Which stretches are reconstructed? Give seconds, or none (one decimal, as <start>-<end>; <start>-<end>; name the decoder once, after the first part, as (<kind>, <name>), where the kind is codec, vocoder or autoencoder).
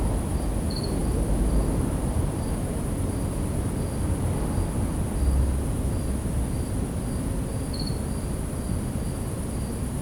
none